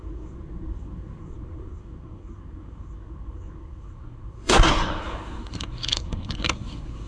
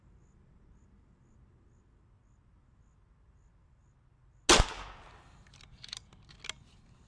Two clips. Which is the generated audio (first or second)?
first